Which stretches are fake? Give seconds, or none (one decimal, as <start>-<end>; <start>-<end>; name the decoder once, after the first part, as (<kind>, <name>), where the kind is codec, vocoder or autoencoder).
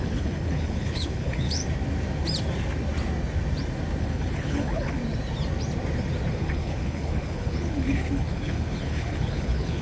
0.0-1.6 (codec, HILCodec); 4.0-5.0; 6.3-9.8